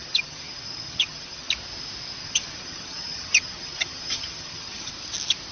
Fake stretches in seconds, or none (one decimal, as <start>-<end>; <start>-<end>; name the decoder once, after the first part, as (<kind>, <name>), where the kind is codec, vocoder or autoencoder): 0.0-1.5 (vocoder, HiFi-GAN); 2.2-4.9